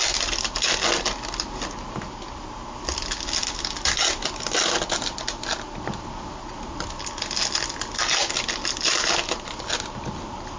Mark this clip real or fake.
real